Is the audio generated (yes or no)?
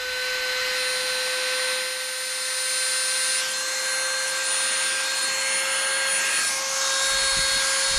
no